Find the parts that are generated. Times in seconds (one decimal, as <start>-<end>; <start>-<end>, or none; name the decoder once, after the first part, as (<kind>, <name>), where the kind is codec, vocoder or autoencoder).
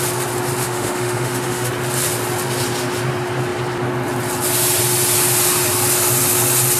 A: 0.6-1.7 (autoencoder, DAC-VAE)